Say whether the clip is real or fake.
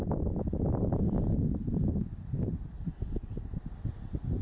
real